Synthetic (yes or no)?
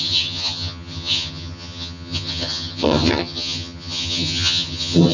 yes